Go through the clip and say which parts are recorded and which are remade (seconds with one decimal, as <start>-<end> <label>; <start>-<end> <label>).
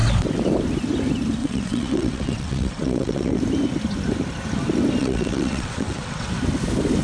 0.0-1.4 recorded; 1.4-3.4 remade; 3.4-5.0 recorded; 5.0-6.3 remade; 6.3-7.0 recorded